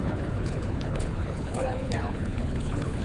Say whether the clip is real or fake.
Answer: fake